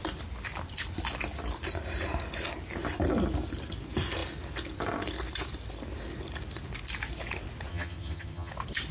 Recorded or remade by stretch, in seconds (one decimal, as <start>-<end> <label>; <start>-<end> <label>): 0.0-7.7 recorded; 7.7-8.5 remade; 8.5-8.9 recorded